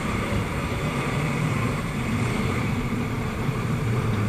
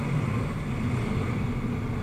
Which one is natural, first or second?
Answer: second